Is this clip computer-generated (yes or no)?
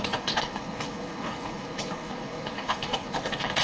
yes